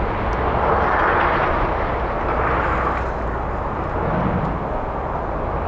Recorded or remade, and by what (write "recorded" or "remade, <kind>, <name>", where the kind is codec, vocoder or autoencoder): recorded